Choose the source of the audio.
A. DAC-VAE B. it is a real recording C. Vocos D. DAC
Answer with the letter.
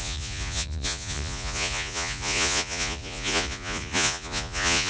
C